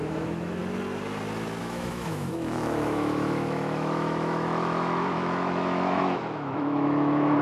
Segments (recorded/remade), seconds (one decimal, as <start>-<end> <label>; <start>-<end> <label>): 0.0-0.6 remade; 0.6-1.6 recorded; 1.6-7.4 remade